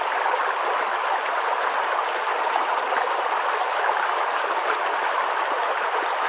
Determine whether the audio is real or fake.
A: real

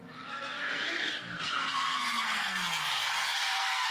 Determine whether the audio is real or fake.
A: fake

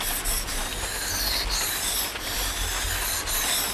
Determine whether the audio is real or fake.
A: real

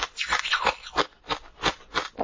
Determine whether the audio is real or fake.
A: real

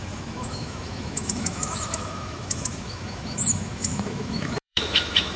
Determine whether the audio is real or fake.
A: fake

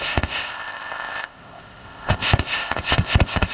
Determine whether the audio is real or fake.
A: fake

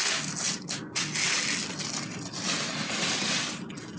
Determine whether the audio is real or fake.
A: real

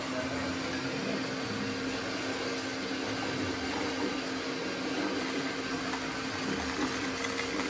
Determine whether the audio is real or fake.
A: real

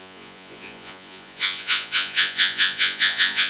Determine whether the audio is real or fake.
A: fake